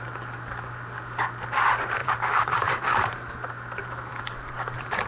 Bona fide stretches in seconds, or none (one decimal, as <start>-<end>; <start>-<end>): 0.0-2.0; 3.2-4.1